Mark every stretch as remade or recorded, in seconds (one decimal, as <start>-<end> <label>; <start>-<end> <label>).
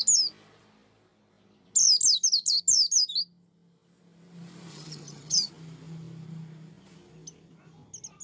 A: 0.0-4.7 recorded; 4.7-5.5 remade; 5.5-8.2 recorded